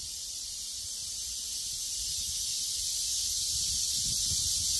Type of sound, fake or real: real